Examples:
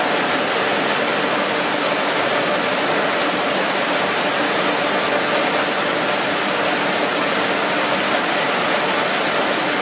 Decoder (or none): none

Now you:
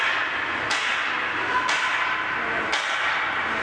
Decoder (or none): none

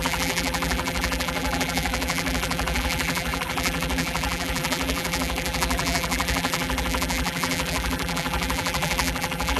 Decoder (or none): vocoder, BigVGAN v2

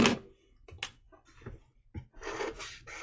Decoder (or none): none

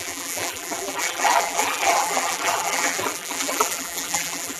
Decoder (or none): vocoder, BigVGAN v2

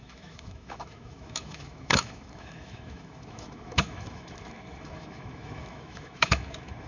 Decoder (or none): autoencoder, DAC-VAE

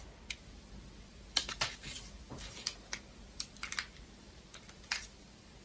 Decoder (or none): vocoder, BigVGAN v2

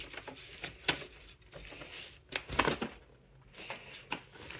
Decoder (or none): none